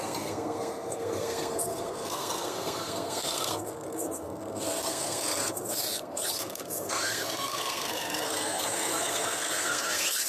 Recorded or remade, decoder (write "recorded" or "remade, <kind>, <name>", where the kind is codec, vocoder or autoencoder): remade, codec, SNAC